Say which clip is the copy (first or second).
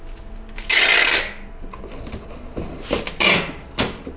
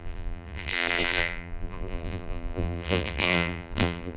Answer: second